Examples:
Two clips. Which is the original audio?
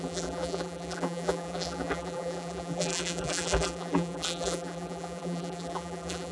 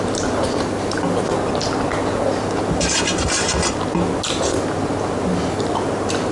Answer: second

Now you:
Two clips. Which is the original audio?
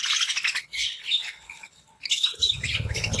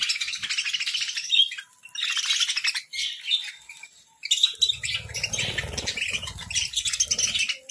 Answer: second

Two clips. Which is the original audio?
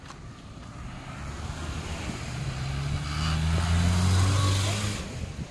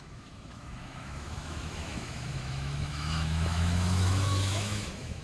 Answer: first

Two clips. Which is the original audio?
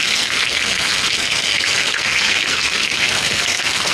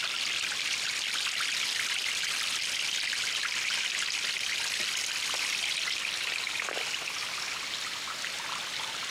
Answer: second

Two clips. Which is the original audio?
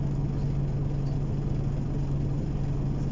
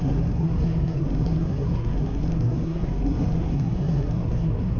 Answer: first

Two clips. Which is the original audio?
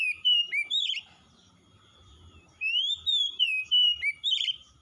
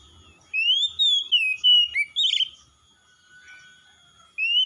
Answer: second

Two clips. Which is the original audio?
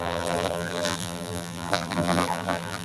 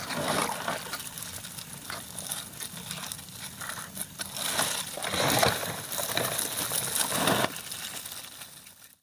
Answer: second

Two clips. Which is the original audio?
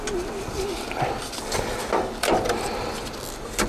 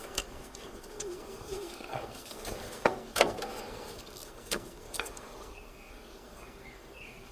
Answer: first